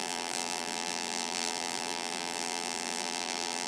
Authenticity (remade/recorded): remade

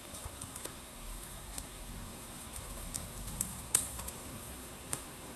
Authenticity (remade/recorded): remade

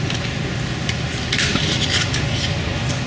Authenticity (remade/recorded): recorded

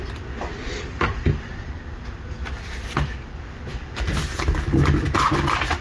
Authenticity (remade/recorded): recorded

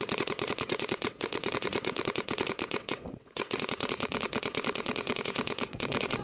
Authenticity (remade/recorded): remade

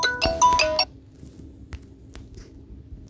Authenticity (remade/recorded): recorded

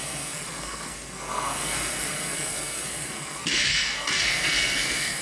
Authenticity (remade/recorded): remade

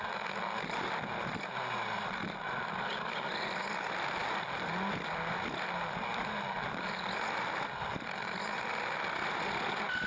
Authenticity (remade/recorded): recorded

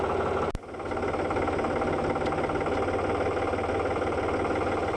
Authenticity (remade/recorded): recorded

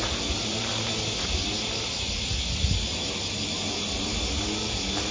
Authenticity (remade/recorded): recorded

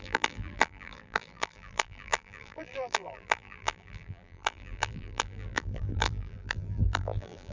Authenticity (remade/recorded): remade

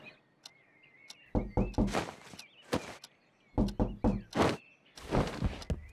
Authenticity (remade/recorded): recorded